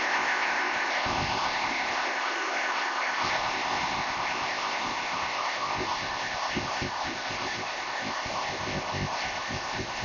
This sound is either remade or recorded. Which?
remade